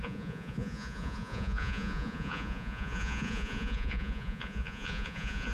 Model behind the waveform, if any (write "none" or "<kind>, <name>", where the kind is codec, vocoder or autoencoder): vocoder, Vocos